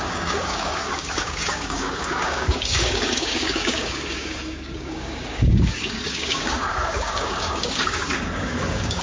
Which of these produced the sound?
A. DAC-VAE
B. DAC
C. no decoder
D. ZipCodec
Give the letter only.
B